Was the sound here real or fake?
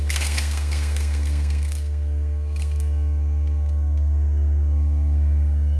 fake